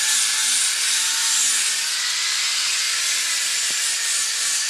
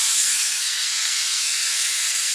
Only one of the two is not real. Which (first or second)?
second